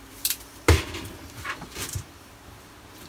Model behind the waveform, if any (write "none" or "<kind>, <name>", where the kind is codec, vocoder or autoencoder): vocoder, BigVGAN v2